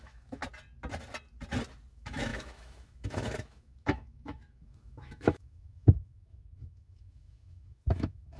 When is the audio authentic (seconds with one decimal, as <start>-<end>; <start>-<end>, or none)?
0.4-1.9